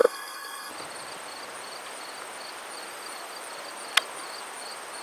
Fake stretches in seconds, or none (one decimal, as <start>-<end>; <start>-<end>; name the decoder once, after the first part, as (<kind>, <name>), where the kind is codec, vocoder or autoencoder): 0.0-0.7 (codec, SNAC)